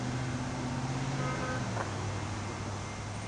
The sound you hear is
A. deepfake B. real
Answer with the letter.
B